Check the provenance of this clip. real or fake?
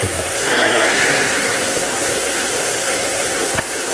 fake